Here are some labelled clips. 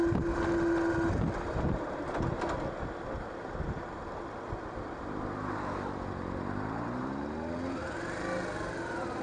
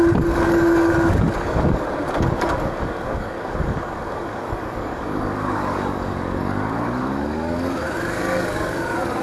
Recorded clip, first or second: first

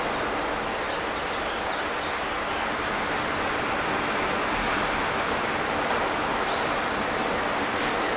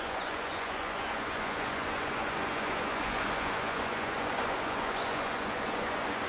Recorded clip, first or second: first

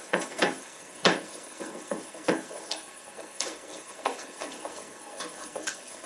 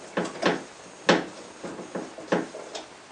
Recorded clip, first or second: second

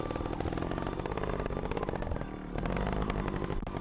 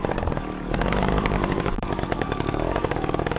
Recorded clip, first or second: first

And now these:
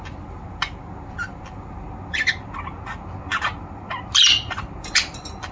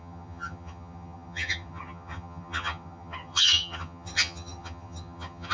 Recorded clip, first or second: first